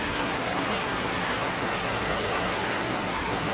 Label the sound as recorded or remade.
remade